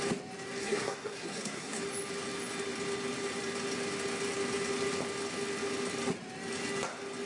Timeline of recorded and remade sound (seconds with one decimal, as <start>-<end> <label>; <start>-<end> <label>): 0.0-0.6 recorded; 0.6-1.8 remade; 1.8-7.3 recorded